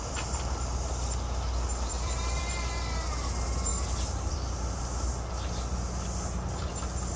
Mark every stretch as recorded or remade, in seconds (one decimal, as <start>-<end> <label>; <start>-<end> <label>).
0.0-1.9 recorded; 1.9-2.4 remade; 2.4-3.7 recorded; 3.7-5.3 remade; 5.3-7.2 recorded